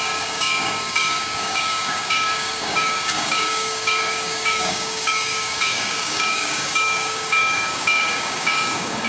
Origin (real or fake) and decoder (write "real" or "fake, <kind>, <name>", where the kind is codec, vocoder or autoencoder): fake, codec, DAC